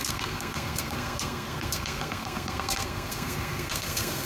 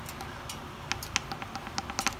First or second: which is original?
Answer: second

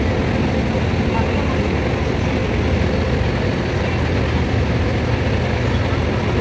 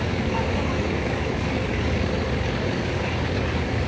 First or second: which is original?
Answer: first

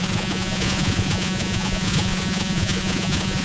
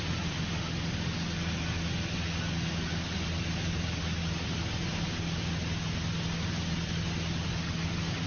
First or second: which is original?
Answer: second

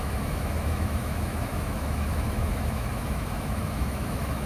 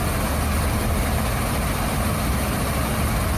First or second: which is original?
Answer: second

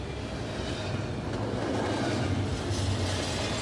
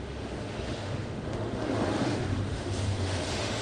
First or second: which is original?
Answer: first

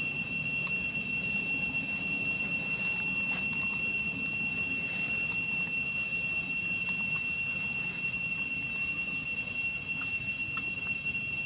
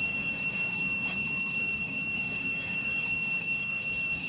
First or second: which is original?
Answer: first